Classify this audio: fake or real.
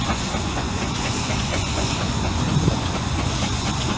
fake